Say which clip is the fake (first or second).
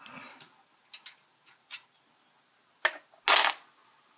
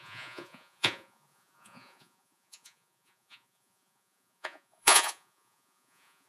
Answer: second